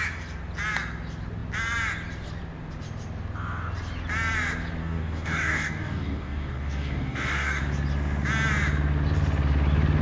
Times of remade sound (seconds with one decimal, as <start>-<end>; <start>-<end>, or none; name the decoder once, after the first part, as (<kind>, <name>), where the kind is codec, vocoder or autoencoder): 4.8-7.6 (codec, DAC)